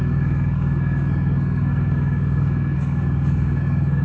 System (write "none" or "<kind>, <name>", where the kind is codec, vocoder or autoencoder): codec, SNAC